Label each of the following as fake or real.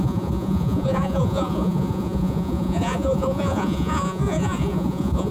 fake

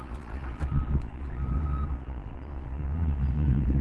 fake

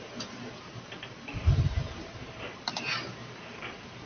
fake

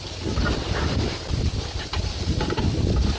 real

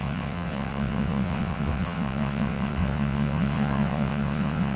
fake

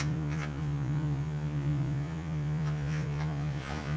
fake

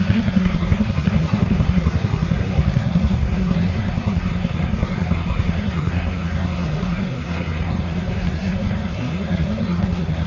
fake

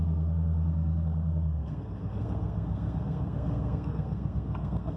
fake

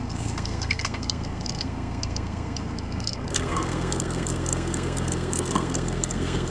fake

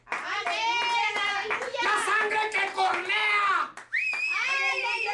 real